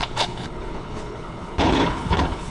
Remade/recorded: remade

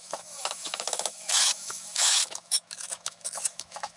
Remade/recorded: remade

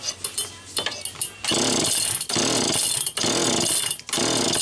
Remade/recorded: recorded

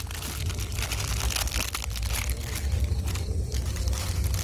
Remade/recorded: recorded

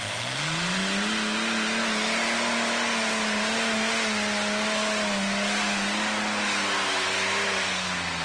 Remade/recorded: recorded